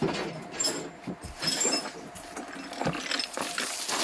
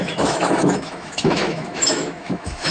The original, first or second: first